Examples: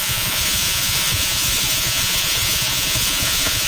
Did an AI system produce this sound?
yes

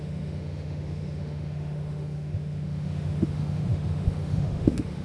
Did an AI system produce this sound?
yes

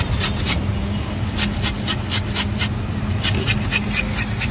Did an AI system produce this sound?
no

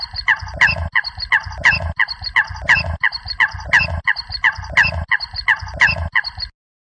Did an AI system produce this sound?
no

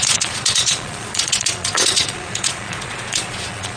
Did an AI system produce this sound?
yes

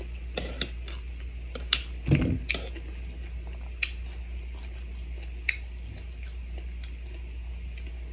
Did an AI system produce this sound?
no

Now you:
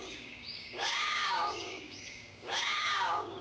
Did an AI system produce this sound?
yes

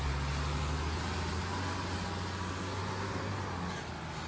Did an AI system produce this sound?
no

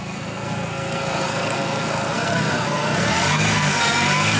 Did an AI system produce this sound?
yes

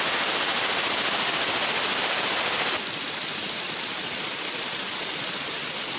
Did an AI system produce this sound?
no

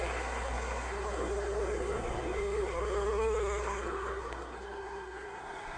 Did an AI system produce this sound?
yes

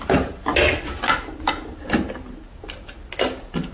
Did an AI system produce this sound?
no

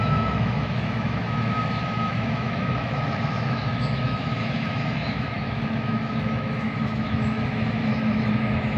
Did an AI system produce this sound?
yes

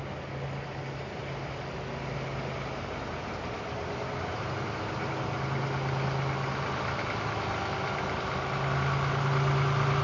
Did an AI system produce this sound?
no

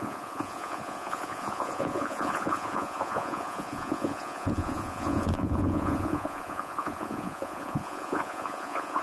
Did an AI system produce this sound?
yes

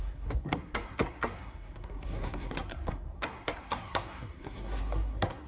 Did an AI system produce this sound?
yes